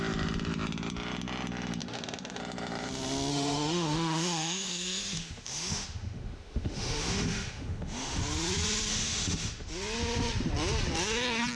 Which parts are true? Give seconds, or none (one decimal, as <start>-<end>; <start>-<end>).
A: 0.0-1.8; 2.4-3.3; 8.2-8.9; 9.7-11.6

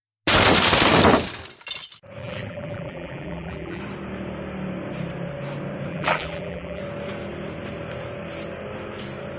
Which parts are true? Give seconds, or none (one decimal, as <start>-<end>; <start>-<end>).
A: 0.0-2.2; 3.8-5.9; 6.8-9.4

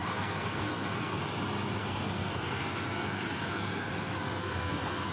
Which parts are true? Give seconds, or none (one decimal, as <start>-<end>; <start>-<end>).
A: 1.2-1.8; 3.8-4.4

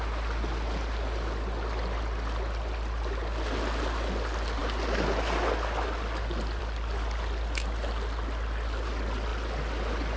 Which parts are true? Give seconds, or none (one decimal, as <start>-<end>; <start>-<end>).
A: 0.0-10.2

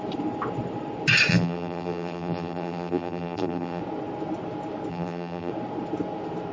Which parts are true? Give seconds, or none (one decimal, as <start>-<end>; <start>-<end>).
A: 0.0-1.3; 3.8-4.9; 5.5-6.5

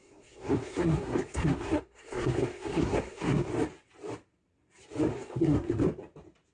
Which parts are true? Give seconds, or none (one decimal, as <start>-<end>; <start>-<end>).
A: 3.5-5.1; 5.8-6.5